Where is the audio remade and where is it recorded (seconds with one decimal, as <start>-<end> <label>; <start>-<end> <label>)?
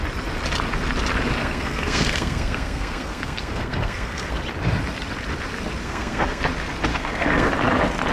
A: 0.0-1.4 recorded; 1.4-4.4 remade; 4.4-5.8 recorded; 5.8-6.4 remade; 6.4-6.9 recorded; 6.9-7.5 remade; 7.5-8.1 recorded